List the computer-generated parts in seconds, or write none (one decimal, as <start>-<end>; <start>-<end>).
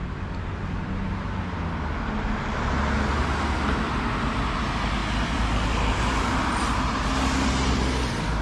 5.0-6.2